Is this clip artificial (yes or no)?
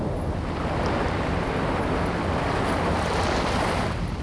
no